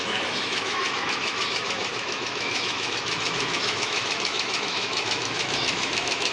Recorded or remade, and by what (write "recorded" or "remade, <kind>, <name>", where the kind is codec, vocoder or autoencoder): remade, autoencoder, DAC-VAE